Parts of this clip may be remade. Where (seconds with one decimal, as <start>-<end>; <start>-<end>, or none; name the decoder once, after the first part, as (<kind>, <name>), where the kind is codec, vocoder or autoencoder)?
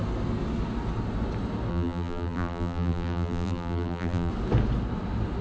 1.7-4.3 (vocoder, BigVGAN v2)